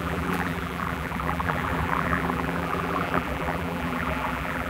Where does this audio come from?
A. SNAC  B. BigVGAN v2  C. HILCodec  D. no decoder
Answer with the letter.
B